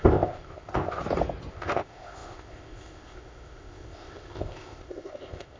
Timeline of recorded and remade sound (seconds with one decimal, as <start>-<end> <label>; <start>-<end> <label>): 0.0-1.0 remade; 1.0-1.5 recorded; 1.5-5.6 remade